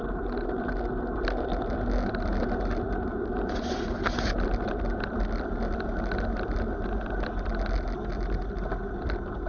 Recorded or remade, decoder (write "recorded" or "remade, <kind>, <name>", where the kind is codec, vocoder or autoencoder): recorded